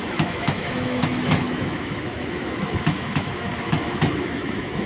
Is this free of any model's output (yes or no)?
no